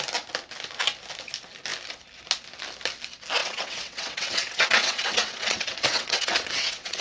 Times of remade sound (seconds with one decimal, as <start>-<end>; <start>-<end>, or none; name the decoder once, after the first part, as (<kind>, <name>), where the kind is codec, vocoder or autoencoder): 3.4-7.0 (vocoder, WaveNeXt)